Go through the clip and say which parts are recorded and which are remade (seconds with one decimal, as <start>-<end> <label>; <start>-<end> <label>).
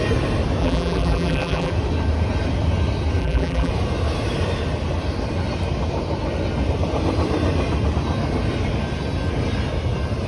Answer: 0.0-0.6 recorded; 0.6-1.7 remade; 1.7-3.2 recorded; 3.2-3.7 remade; 3.7-10.3 recorded